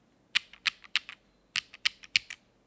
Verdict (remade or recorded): recorded